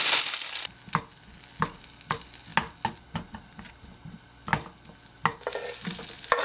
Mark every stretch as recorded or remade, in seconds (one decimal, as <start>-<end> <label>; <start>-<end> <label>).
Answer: 0.0-6.4 recorded

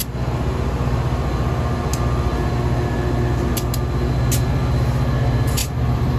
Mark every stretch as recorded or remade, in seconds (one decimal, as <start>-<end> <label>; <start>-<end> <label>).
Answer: 0.0-5.6 recorded; 5.6-6.2 remade

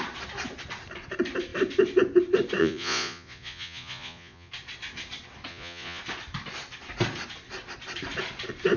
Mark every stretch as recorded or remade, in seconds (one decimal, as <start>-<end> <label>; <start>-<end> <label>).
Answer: 0.0-2.6 recorded; 2.6-4.5 remade; 4.5-5.5 recorded; 5.5-6.0 remade; 6.0-8.8 recorded

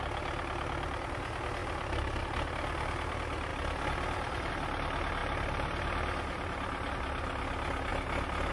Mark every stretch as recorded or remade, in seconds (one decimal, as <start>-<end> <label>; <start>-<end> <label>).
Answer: 0.0-1.6 recorded; 1.6-2.2 remade; 2.2-3.5 recorded; 3.5-4.5 remade; 4.5-5.2 recorded; 5.2-6.9 remade; 6.9-7.9 recorded; 7.9-8.5 remade